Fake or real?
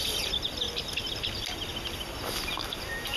real